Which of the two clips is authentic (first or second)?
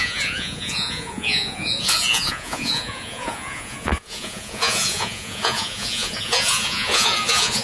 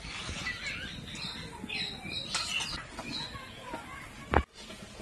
second